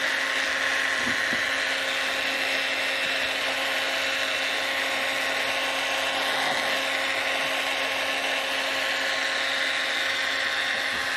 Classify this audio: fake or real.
real